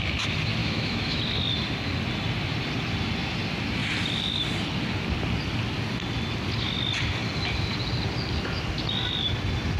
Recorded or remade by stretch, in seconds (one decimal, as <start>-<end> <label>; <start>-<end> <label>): 0.0-0.6 recorded; 0.6-1.2 remade; 1.2-9.8 recorded